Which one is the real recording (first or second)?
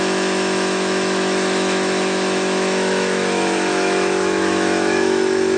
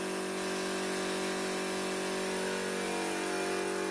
second